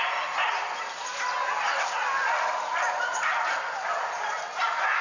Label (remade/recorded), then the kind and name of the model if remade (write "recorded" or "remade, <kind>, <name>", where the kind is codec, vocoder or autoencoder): recorded